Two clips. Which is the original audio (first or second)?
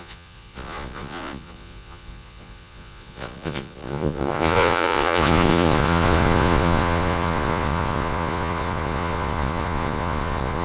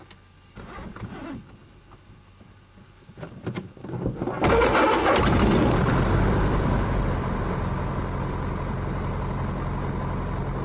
second